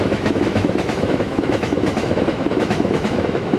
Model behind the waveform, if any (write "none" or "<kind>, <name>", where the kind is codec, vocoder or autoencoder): autoencoder, DAC-VAE